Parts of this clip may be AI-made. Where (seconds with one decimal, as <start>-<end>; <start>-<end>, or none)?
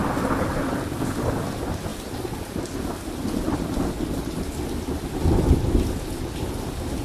none